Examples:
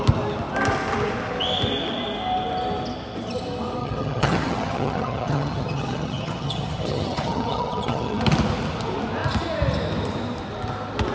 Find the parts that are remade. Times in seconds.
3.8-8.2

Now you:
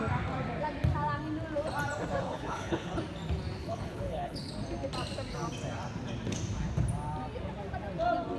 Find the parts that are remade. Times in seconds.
2.2-2.9; 3.6-4.5

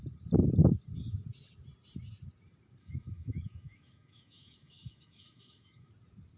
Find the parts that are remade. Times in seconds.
2.8-5.9

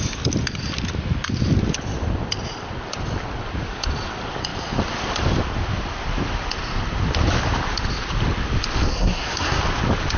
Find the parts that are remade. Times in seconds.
8.9-9.6